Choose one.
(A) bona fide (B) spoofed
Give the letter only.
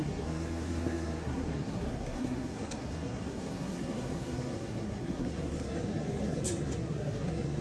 B